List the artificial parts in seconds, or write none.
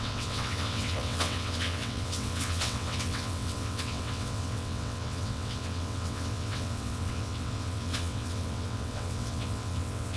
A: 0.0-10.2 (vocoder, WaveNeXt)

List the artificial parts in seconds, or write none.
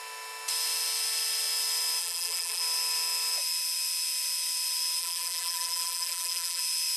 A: 2.0-2.6 (vocoder, BigVGAN v2); 5.0-6.6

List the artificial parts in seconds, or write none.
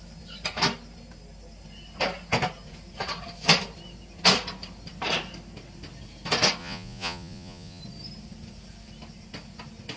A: 6.6-7.8 (vocoder, Vocos)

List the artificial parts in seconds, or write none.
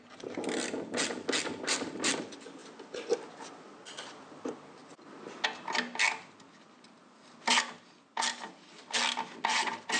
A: none